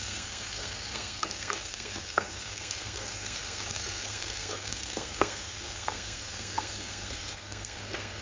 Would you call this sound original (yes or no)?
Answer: no